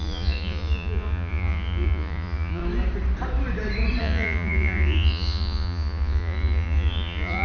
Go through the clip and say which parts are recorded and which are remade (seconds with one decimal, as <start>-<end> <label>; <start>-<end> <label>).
0.0-2.6 remade; 2.6-4.0 recorded; 4.0-7.4 remade